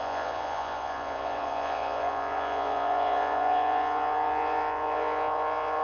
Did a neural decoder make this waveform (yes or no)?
yes